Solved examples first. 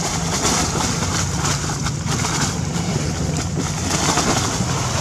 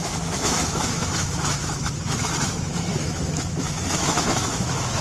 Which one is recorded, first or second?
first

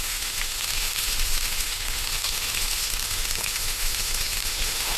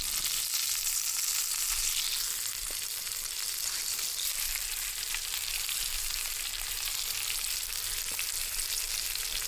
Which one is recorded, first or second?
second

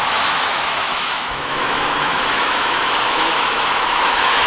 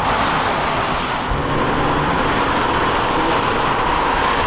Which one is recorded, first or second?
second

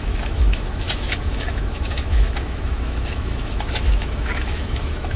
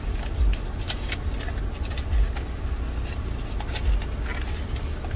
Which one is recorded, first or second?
second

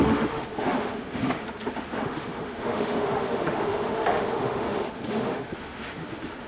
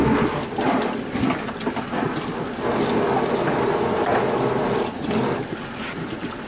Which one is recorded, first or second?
second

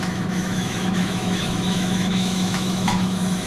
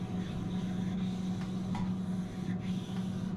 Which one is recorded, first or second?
second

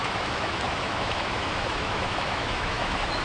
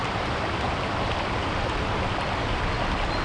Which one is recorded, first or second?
second